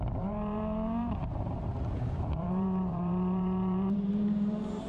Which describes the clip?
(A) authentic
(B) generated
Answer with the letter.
B